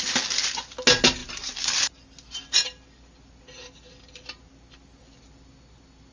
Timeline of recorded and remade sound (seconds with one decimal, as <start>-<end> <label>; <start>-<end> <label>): 0.0-6.1 recorded